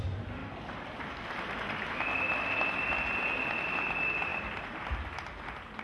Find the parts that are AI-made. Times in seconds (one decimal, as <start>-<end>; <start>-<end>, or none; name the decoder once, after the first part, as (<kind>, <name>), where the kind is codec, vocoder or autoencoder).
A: 0.0-0.4 (vocoder, BigVGAN v2); 3.9-4.3; 4.8-5.8

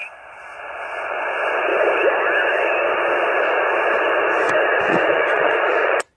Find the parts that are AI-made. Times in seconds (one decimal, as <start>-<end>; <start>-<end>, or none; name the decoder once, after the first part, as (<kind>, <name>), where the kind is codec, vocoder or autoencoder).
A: 0.6-1.7 (vocoder, Vocos); 4.8-6.2

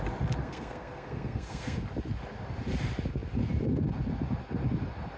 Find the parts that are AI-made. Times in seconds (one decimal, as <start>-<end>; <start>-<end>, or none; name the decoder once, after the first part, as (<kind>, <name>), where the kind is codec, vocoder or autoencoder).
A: 0.4-1.8 (codec, SNAC)

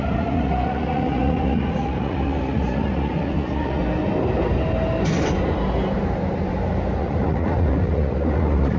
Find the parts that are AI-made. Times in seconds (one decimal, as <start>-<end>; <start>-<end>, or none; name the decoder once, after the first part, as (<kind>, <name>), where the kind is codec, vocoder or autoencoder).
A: 0.0-3.8 (vocoder, Vocos); 7.0-8.8

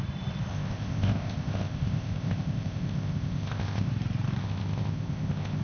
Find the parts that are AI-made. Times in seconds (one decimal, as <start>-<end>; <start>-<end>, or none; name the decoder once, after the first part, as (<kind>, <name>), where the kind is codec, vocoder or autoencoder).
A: 0.5-3.9 (codec, ZipCodec); 4.4-5.6

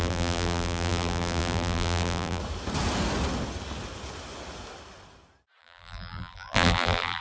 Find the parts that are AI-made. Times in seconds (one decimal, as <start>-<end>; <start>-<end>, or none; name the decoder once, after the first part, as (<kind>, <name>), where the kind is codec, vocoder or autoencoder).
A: 0.0-2.4 (vocoder, BigVGAN v2); 5.6-7.2